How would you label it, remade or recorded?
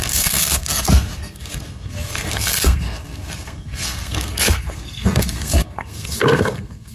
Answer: remade